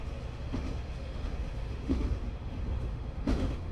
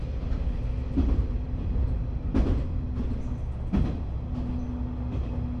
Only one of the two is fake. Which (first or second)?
first